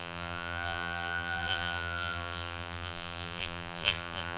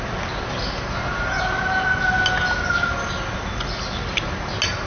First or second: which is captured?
second